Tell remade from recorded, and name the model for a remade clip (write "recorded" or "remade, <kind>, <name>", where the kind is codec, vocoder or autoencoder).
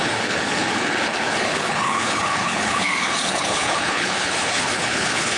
remade, codec, HILCodec